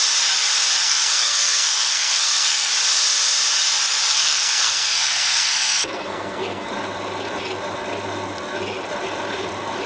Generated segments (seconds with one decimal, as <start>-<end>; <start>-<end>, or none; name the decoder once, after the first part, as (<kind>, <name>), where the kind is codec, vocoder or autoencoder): 0.8-2.7 (codec, SNAC); 4.1-6.7